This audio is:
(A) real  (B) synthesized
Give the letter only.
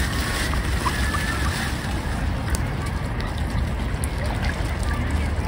A